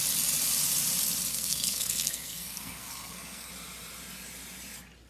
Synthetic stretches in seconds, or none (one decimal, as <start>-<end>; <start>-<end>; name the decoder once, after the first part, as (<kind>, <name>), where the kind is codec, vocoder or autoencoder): 1.3-3.5 (codec, SNAC)